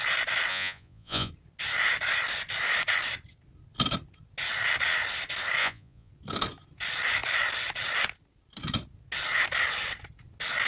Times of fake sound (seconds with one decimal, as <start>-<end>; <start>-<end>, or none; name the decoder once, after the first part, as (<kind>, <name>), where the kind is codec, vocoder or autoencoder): 0.5-1.3 (vocoder, Vocos); 5.6-6.1